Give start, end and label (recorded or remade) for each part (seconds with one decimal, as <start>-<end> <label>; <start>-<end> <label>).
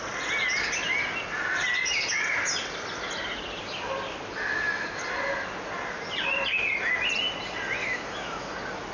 0.0-7.8 recorded; 7.8-8.5 remade; 8.5-8.9 recorded